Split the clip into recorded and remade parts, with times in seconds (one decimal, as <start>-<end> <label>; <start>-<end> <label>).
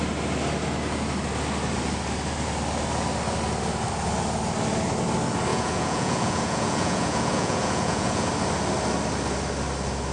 0.0-5.5 recorded; 5.5-8.3 remade; 8.3-10.1 recorded